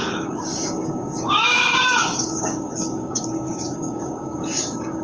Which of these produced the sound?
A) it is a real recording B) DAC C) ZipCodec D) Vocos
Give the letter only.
B